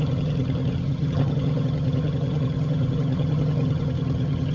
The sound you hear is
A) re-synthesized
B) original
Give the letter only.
A